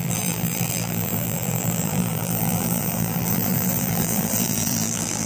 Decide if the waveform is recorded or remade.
remade